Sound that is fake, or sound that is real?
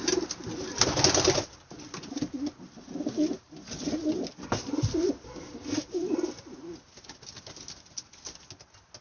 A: real